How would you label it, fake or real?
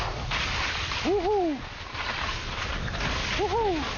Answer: real